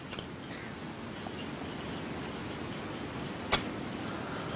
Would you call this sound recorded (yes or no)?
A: yes